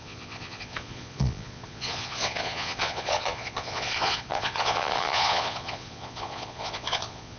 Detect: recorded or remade remade